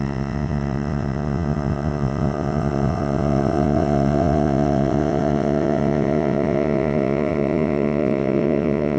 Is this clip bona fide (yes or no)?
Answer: no